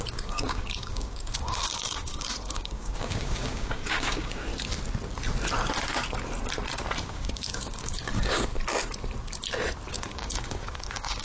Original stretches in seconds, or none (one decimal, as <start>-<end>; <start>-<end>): 4.5-7.0; 8.5-9.9